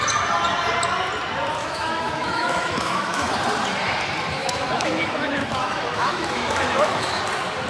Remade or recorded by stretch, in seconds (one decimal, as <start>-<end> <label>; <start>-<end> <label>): 0.0-1.6 recorded; 1.6-3.3 remade; 3.3-4.4 recorded; 4.4-7.2 remade; 7.2-7.7 recorded